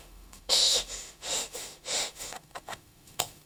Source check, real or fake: fake